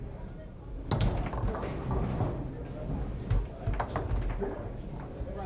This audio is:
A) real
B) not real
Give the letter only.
A